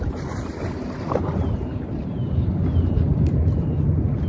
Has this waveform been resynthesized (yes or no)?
yes